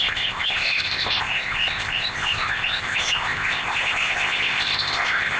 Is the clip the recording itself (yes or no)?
no